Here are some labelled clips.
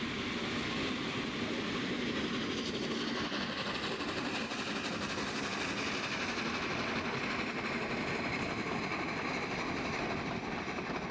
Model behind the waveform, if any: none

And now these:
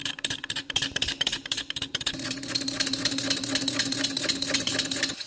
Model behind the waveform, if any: none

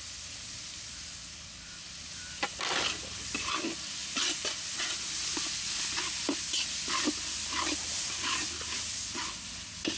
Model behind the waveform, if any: none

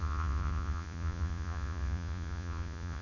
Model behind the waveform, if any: vocoder, Vocos